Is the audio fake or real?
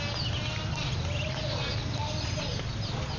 real